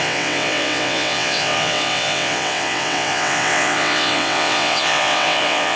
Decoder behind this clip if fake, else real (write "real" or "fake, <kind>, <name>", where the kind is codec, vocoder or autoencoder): fake, vocoder, WaveNeXt